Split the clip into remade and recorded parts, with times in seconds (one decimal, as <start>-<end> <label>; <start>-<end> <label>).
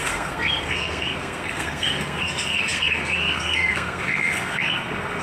0.0-5.2 remade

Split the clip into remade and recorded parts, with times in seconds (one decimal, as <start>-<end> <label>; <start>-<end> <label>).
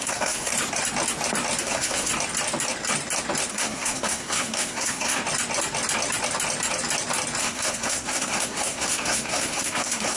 0.0-0.5 remade; 0.5-1.6 recorded; 1.6-2.1 remade; 2.1-3.5 recorded; 3.5-5.2 remade; 5.2-7.4 recorded; 7.4-10.2 remade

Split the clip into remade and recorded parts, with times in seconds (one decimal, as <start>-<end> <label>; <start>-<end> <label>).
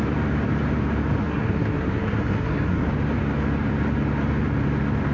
0.0-1.2 recorded; 1.2-2.9 remade; 2.9-5.1 recorded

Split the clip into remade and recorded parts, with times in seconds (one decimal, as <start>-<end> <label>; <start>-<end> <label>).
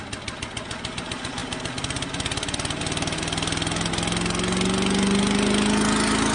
0.0-6.3 recorded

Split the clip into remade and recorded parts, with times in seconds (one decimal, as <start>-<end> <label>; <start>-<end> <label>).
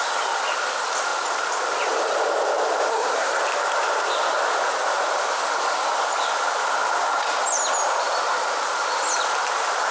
0.0-2.9 recorded; 2.9-3.4 remade; 3.4-9.9 recorded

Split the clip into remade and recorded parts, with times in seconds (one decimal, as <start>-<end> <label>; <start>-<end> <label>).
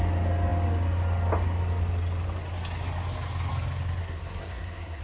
0.0-4.0 recorded; 4.0-5.0 remade